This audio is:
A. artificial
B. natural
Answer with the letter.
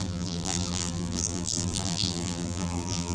A